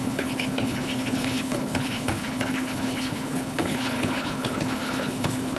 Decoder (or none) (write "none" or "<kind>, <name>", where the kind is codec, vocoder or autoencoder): codec, HILCodec